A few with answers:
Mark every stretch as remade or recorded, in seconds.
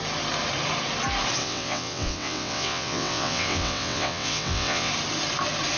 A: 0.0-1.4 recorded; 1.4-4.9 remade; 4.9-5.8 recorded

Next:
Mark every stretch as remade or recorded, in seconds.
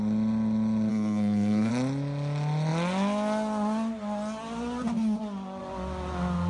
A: 0.0-0.9 recorded; 0.9-1.7 remade; 1.7-6.5 recorded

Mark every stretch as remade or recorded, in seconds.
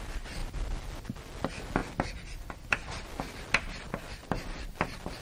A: 0.0-5.2 recorded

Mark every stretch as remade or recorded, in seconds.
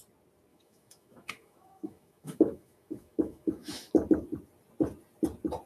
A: 0.0-0.5 recorded; 0.5-3.9 remade; 3.9-5.7 recorded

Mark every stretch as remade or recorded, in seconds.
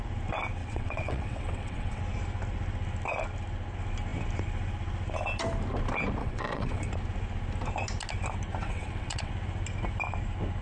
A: 0.0-0.6 recorded; 0.6-2.0 remade; 2.0-6.2 recorded; 6.2-6.9 remade; 6.9-8.6 recorded; 8.6-9.3 remade; 9.3-10.6 recorded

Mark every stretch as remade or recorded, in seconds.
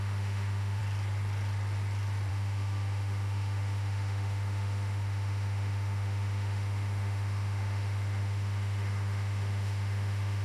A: 0.0-0.8 remade; 0.8-2.3 recorded; 2.3-10.4 remade